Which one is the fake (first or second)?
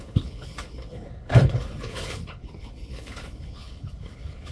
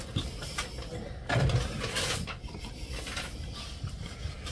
first